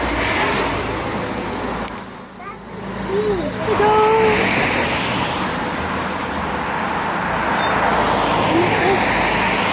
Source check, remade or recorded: recorded